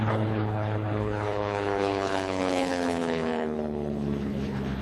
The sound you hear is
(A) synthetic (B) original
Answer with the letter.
A